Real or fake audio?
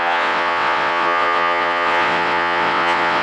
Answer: fake